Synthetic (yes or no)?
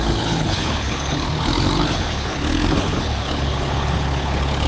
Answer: yes